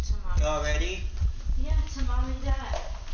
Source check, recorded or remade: recorded